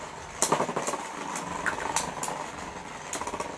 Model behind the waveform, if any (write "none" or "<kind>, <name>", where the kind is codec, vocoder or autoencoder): none